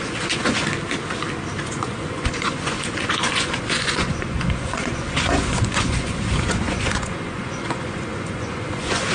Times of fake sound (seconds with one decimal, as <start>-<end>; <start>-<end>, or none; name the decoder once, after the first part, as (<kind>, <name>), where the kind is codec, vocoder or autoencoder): 0.0-0.6 (vocoder, Vocos); 1.6-9.1